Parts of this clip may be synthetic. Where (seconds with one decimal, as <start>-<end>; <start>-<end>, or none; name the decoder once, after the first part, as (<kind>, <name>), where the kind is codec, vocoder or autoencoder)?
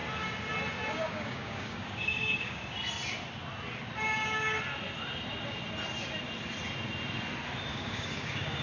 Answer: 0.9-2.6 (codec, DAC); 7.7-8.6